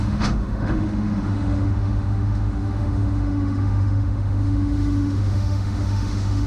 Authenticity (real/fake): fake